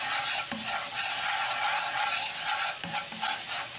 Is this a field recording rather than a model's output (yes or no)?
yes